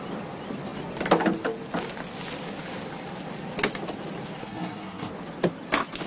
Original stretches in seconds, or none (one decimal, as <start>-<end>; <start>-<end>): 0.0-4.4; 5.1-6.1